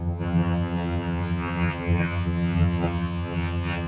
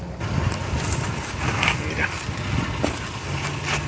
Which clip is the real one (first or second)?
second